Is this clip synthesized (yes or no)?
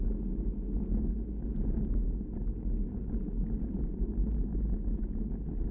no